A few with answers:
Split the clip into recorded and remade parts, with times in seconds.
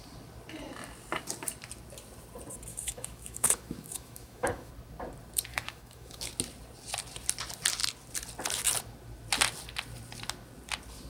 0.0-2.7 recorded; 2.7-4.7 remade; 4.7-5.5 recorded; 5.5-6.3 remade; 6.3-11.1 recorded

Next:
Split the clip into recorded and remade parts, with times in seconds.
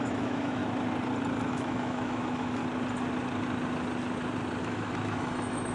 0.0-0.6 remade; 0.6-1.5 recorded; 1.5-2.6 remade; 2.6-4.6 recorded; 4.6-5.7 remade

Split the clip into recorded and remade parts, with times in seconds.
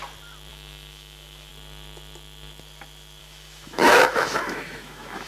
0.0-0.5 recorded; 0.5-1.5 remade; 1.5-3.2 recorded; 3.2-5.3 remade